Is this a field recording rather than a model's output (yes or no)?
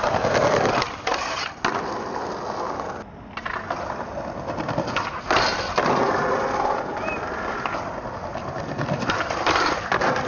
yes